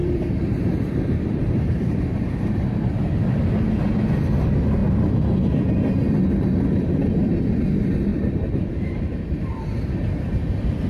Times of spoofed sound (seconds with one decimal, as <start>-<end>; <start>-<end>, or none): 0.0-3.1; 8.1-8.6